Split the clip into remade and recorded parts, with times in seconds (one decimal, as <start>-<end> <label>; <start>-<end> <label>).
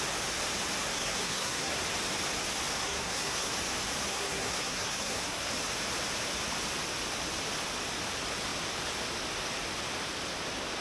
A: 0.0-0.9 recorded; 0.9-1.8 remade; 1.8-2.8 recorded; 2.8-3.5 remade; 3.5-4.1 recorded; 4.1-5.5 remade; 5.5-10.8 recorded